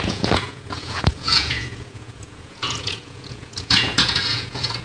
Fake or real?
fake